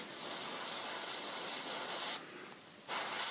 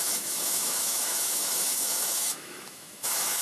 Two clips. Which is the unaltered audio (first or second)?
first